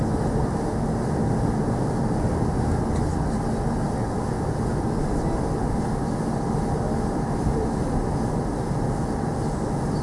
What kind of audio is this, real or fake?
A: real